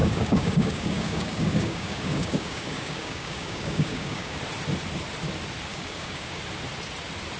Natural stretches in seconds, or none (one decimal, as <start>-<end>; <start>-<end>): 4.4-5.7; 6.4-7.4